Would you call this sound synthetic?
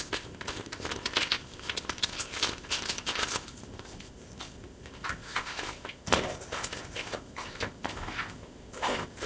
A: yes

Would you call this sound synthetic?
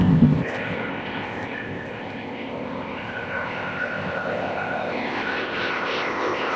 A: yes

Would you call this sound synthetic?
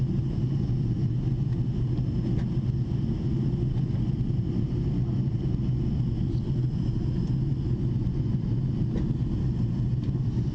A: no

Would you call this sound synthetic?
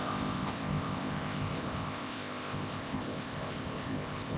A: yes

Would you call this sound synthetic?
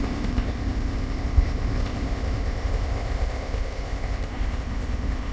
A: yes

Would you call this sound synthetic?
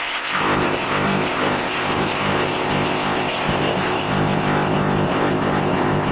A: yes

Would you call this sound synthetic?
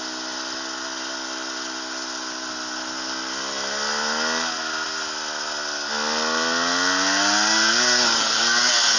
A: no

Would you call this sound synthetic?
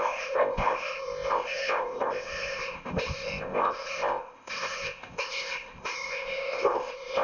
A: yes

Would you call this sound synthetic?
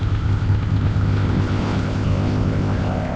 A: yes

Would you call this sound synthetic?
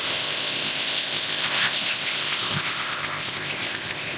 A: yes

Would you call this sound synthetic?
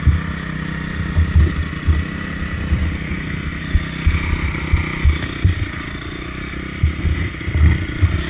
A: no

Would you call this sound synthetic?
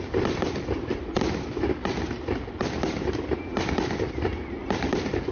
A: no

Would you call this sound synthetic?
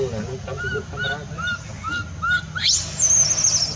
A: no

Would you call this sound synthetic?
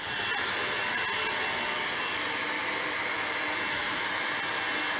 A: no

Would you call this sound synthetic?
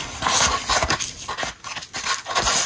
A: no